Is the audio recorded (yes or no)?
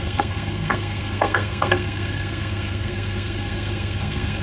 no